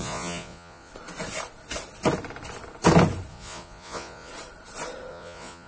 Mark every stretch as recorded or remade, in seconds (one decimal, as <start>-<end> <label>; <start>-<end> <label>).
0.0-0.9 remade; 0.9-3.3 recorded; 3.3-4.3 remade; 4.3-5.1 recorded; 5.1-5.7 remade